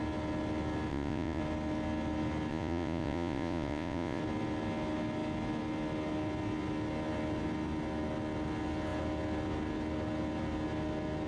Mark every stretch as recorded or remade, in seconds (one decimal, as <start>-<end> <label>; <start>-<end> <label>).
0.0-0.9 recorded; 0.9-1.4 remade; 1.4-2.5 recorded; 2.5-4.2 remade; 4.2-11.3 recorded

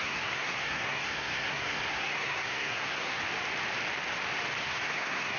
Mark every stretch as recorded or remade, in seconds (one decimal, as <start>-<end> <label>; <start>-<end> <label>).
0.0-3.2 remade; 3.2-4.6 recorded; 4.6-5.4 remade

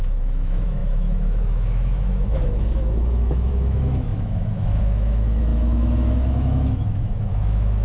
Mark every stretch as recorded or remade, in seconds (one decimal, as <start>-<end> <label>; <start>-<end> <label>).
0.0-7.8 remade

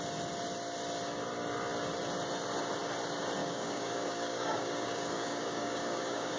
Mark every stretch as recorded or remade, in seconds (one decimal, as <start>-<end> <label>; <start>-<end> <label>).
0.0-3.4 recorded; 3.4-6.4 remade

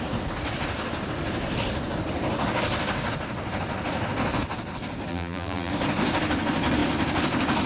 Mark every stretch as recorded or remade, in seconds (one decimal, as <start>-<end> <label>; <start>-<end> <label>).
0.0-5.1 recorded; 5.1-5.7 remade; 5.7-7.7 recorded

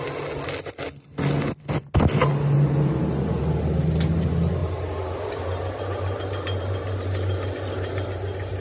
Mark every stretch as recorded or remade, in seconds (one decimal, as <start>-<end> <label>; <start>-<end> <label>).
0.0-8.6 recorded